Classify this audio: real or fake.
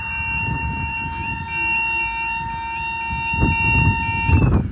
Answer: real